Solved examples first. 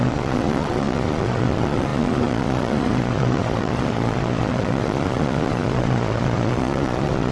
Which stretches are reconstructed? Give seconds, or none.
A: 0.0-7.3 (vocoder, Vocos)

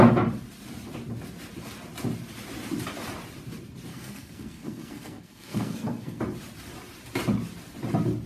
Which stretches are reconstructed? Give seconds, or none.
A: 3.9-6.2 (codec, SNAC)

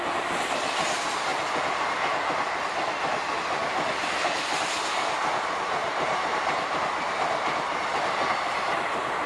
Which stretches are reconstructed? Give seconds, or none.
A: 5.8-6.8 (vocoder, BigVGAN v2)

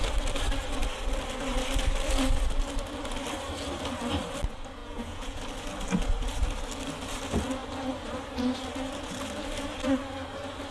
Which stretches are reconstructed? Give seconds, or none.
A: 4.8-5.4 (vocoder, Vocos)

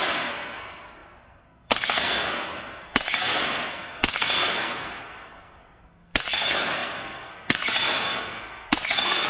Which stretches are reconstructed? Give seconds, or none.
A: 0.0-9.3 (codec, SNAC)

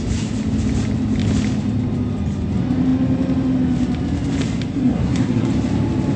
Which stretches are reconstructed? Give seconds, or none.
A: 4.7-5.5 (codec, SNAC)

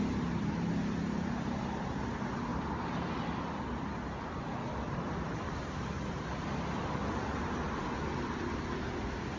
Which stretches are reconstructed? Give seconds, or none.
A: 2.5-3.1 (vocoder, BigVGAN v2)